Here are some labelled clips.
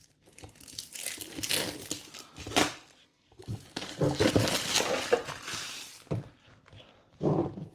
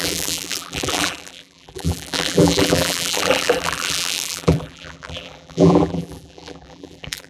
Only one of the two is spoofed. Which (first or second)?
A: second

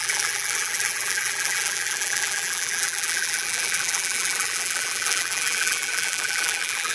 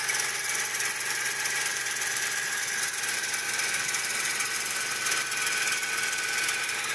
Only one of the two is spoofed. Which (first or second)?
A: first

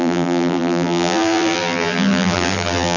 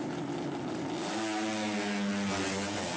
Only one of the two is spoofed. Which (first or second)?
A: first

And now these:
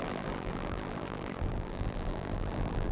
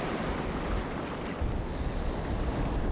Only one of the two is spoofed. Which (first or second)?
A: first